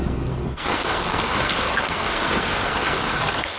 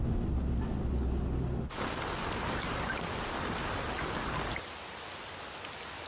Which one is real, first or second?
second